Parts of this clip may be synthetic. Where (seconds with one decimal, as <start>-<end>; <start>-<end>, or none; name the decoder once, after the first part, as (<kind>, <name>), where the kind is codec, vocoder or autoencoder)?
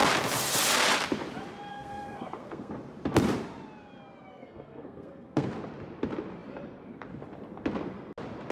1.7-2.7 (codec, SNAC); 4.3-5.5